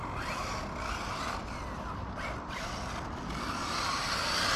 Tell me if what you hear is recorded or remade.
recorded